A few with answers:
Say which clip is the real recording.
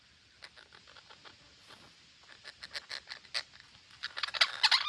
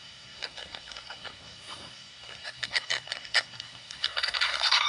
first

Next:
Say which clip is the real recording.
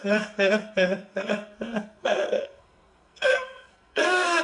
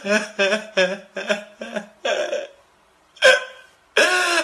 second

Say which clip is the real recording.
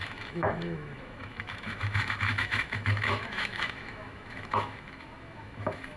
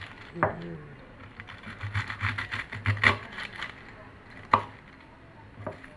second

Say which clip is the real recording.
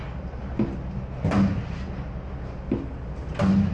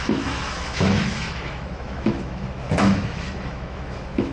first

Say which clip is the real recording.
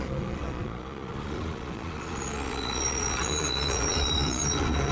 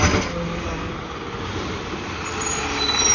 second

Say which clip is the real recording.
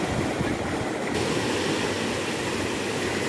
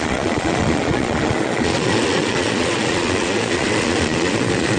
first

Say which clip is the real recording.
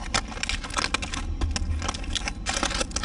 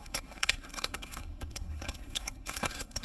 first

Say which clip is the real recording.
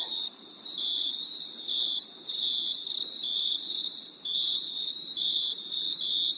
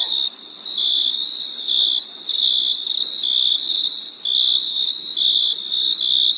second